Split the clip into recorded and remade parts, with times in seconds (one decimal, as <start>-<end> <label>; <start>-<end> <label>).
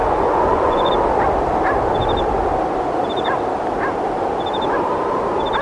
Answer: 0.0-0.9 remade; 0.9-5.6 recorded